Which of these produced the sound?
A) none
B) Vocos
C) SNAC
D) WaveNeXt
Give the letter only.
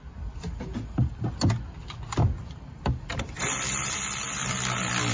A